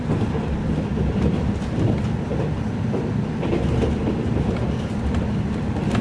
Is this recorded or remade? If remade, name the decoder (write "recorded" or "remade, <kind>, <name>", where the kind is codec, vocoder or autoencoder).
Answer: recorded